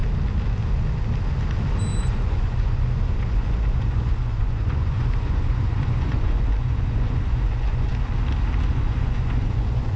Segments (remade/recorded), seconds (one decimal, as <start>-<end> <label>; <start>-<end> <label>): 0.0-2.0 recorded; 2.0-7.9 remade; 7.9-8.7 recorded; 8.7-10.0 remade